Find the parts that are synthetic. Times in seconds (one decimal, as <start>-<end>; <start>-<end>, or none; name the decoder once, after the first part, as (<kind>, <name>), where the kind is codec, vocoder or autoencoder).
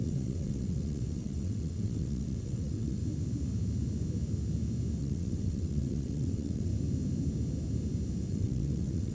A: 0.0-3.0 (vocoder, WaveNeXt); 5.0-6.7; 8.3-9.1